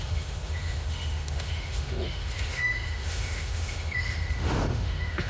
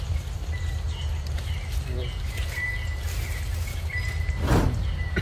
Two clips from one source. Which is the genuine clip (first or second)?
second